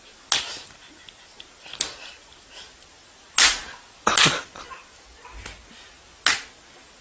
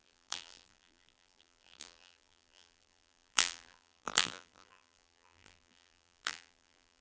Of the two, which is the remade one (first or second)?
second